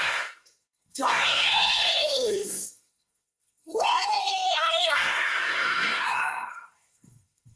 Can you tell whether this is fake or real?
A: fake